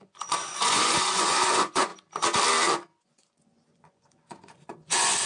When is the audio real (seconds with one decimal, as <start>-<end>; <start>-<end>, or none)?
1.9-3.0